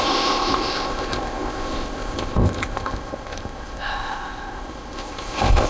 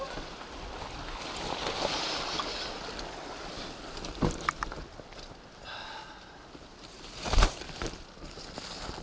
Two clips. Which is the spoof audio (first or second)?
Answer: first